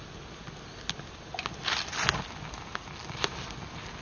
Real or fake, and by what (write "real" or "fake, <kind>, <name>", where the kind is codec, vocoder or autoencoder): real